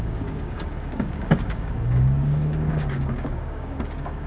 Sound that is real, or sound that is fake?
fake